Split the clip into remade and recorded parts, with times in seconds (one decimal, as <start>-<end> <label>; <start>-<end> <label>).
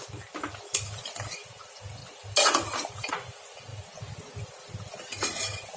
0.0-5.8 recorded